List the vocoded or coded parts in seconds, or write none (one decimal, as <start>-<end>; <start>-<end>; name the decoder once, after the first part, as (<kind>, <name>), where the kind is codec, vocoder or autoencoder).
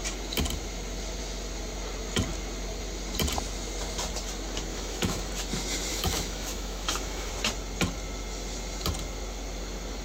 4.7-5.3 (autoencoder, DAC-VAE); 5.9-7.3